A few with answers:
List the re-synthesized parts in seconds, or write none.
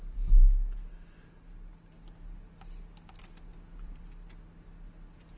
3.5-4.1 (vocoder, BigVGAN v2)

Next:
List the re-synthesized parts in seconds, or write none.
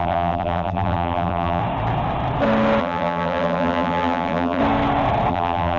0.0-1.6 (vocoder, BigVGAN v2); 2.8-4.6; 5.3-5.8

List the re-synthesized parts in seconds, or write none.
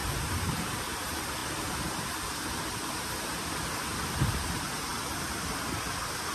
none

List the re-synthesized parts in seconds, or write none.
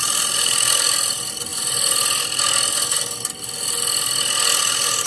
0.0-1.5 (vocoder, BigVGAN v2); 4.6-5.1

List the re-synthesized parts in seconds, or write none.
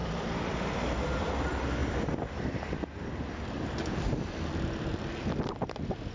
0.0-1.3 (vocoder, BigVGAN v2); 1.8-5.5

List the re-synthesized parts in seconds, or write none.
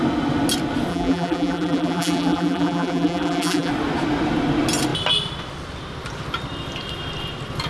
0.9-3.7 (vocoder, BigVGAN v2)